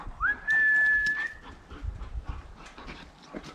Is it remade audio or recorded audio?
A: recorded